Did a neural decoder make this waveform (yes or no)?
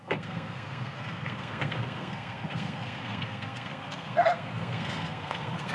yes